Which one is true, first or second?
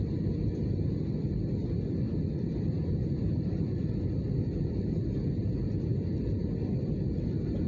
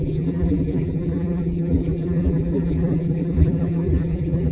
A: first